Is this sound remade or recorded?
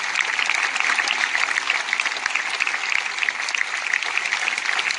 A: recorded